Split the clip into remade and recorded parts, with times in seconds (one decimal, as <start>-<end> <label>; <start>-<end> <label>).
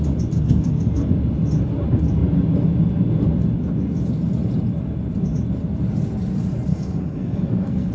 0.0-0.4 recorded; 0.4-1.1 remade; 1.1-6.7 recorded; 6.7-7.9 remade